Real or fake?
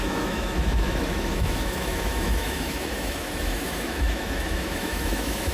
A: fake